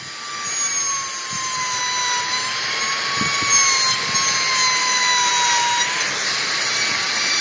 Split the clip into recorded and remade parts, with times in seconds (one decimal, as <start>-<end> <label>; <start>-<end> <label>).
0.0-4.8 recorded; 4.8-5.3 remade; 5.3-7.4 recorded